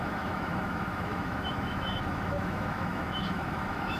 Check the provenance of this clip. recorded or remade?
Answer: remade